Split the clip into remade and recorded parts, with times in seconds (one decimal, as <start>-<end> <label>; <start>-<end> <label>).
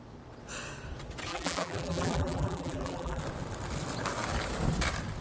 0.0-1.3 recorded; 1.3-3.2 remade; 3.2-5.2 recorded